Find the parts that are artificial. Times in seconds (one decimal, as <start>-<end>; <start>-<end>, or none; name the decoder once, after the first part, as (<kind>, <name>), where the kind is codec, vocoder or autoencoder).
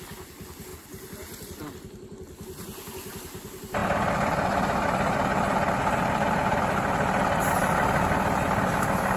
0.7-1.7 (vocoder, BigVGAN v2)